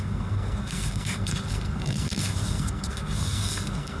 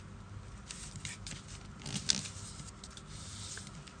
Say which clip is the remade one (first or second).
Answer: first